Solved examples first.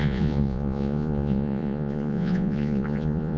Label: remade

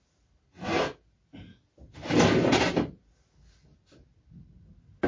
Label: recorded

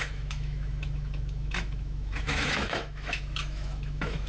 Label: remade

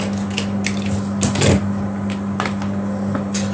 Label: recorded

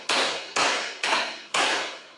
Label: remade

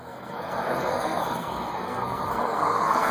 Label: remade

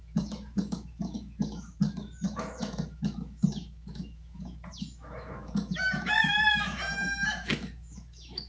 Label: remade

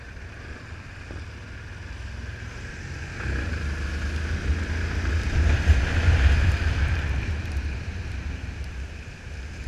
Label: recorded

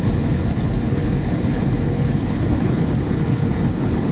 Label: remade